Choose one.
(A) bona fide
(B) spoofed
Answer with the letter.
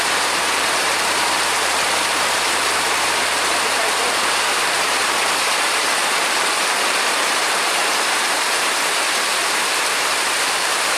B